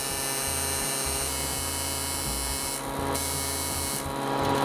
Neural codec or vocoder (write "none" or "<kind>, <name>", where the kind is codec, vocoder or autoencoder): none